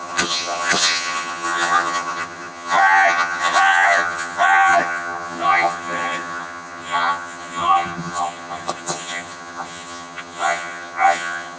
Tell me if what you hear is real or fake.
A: fake